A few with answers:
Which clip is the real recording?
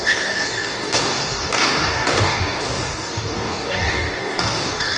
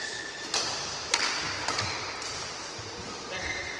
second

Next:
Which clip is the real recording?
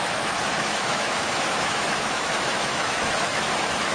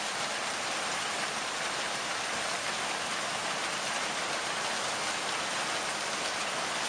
second